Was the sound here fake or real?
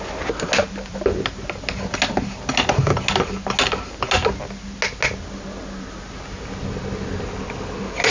real